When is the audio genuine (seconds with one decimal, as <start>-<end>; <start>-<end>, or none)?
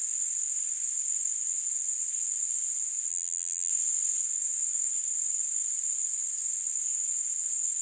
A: 0.0-3.1; 3.7-7.8